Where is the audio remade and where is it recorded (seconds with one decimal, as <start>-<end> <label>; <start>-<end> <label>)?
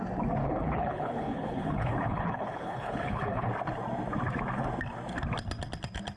0.0-0.4 recorded; 0.4-3.5 remade; 3.5-6.2 recorded